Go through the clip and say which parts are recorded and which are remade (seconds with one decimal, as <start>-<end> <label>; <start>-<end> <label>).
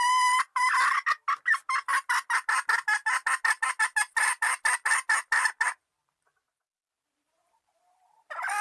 0.0-8.6 recorded